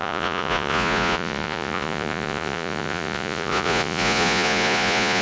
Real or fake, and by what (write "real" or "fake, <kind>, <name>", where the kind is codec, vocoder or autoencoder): fake, vocoder, Vocos